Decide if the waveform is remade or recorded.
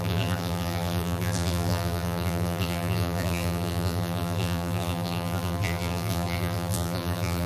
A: remade